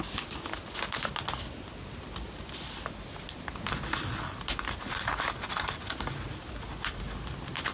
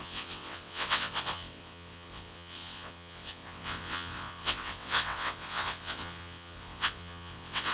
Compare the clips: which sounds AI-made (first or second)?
second